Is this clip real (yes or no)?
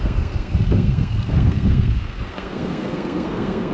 no